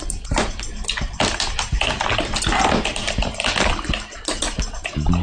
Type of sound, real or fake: real